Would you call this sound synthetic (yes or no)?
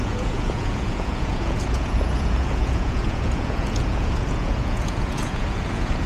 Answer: yes